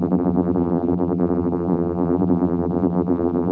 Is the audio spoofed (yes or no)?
yes